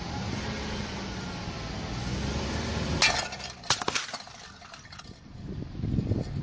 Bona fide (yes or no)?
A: yes